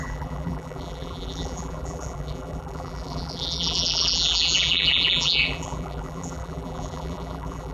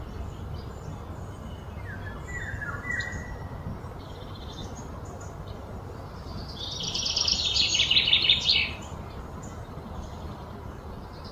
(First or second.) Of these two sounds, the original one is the second